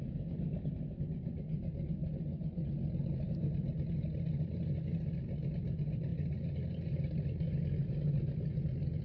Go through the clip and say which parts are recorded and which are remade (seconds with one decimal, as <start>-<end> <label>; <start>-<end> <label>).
0.0-9.0 recorded